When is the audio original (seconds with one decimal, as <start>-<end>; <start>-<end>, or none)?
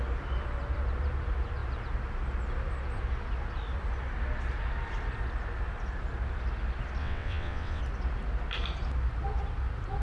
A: 0.0-7.0; 7.8-10.0